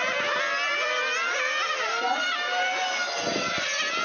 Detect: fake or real real